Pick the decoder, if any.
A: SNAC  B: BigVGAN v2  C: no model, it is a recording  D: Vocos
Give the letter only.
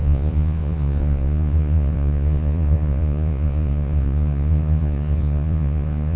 D